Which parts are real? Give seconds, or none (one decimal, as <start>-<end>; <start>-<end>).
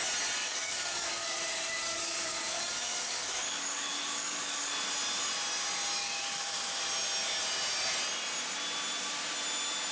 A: 0.0-0.4; 4.7-6.0; 6.8-9.9